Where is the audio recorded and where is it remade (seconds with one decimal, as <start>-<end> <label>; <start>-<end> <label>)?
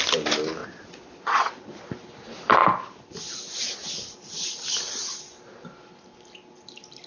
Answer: 0.0-0.6 recorded; 0.6-1.8 remade; 1.8-7.1 recorded